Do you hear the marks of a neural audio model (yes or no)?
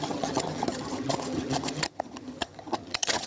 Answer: yes